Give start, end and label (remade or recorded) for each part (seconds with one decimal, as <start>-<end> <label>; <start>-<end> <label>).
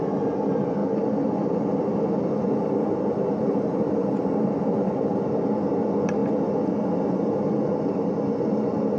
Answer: 0.0-6.2 remade; 6.2-8.4 recorded; 8.4-9.0 remade